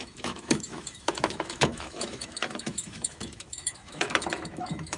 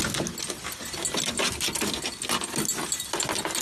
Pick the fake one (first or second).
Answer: first